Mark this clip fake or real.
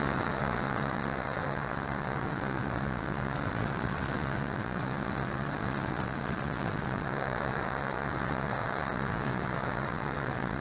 fake